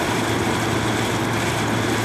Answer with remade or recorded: remade